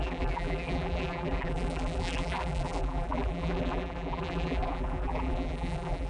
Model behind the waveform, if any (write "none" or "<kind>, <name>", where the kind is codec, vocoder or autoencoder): vocoder, BigVGAN v2